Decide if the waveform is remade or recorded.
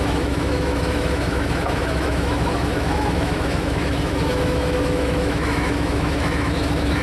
remade